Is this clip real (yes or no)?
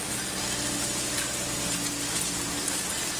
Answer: yes